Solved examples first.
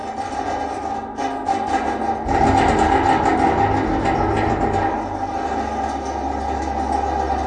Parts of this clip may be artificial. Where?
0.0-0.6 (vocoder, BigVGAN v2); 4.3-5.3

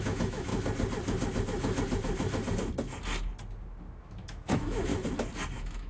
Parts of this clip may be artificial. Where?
0.0-0.5 (autoencoder, DAC-VAE); 4.0-4.9; 5.5-5.9

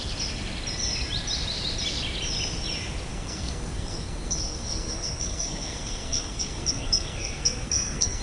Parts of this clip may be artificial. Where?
3.1-8.2 (codec, SNAC)

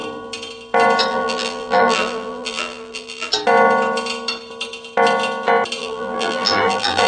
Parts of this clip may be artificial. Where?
1.1-3.3 (vocoder, BigVGAN v2); 5.8-7.1

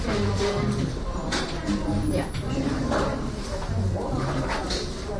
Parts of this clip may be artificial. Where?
0.0-4.6 (vocoder, BigVGAN v2)

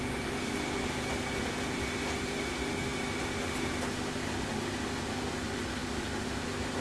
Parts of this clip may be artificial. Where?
none